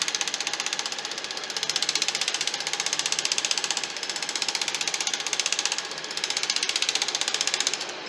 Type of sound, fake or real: real